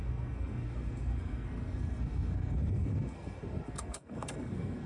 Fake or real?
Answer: fake